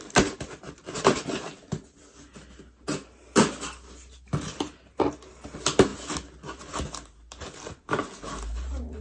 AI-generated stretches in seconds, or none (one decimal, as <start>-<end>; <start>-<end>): none